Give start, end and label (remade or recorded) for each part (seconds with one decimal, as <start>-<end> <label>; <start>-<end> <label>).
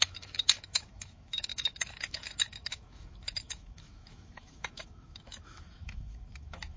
0.0-6.8 remade